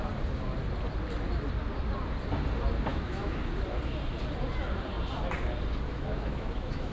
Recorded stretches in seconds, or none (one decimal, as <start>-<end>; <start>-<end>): 0.0-2.9; 3.5-5.9